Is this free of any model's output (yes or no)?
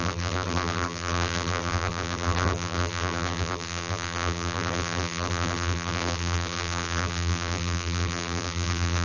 no